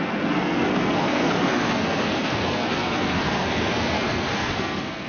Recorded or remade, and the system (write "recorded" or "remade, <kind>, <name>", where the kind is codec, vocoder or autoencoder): remade, codec, SNAC